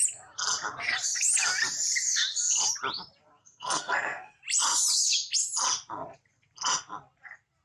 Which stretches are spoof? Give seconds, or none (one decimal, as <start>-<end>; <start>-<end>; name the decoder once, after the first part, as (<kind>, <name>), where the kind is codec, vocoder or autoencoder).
3.4-4.4 (codec, SNAC)